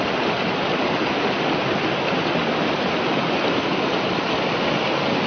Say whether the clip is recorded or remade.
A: recorded